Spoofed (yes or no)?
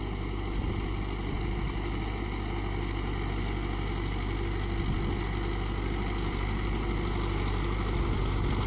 no